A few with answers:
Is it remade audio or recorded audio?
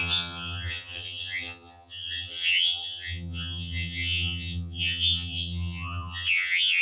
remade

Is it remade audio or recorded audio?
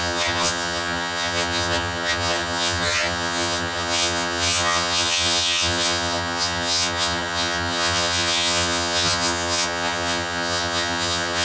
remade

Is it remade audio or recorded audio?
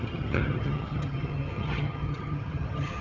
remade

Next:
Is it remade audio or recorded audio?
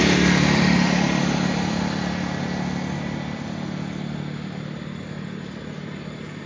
recorded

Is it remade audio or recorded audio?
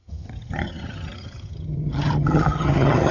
remade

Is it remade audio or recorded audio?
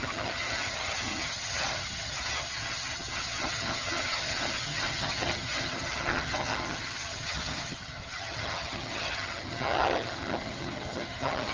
remade